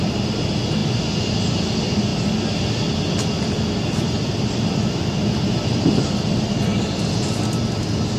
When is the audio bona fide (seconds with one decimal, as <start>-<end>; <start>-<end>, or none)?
0.0-8.2

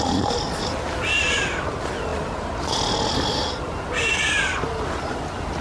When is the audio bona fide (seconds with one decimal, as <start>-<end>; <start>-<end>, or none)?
0.0-5.6

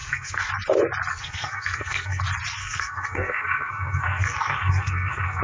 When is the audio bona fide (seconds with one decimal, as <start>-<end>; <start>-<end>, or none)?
0.5-1.1; 2.2-2.6

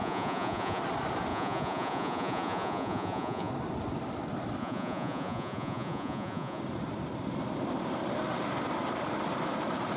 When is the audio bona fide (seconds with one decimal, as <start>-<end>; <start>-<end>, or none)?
0.8-1.3; 3.5-4.6; 6.6-10.0

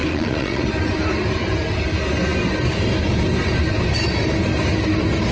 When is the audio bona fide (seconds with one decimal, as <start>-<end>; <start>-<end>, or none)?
0.6-5.3

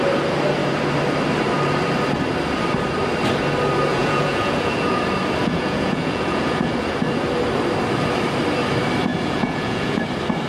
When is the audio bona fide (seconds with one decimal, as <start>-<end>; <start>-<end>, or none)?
0.0-3.9; 5.0-5.4; 6.9-9.1; 10.0-10.5